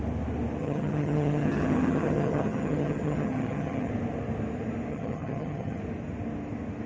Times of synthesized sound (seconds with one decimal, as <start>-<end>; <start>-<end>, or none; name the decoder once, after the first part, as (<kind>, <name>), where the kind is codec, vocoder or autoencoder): 0.6-3.9 (vocoder, HiFi-GAN); 4.9-5.8